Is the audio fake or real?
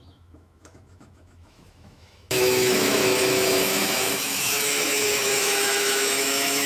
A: fake